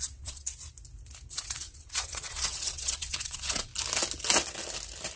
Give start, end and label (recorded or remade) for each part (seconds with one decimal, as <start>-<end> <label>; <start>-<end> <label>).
0.0-0.5 remade; 0.5-1.3 recorded; 1.3-3.7 remade; 3.7-5.2 recorded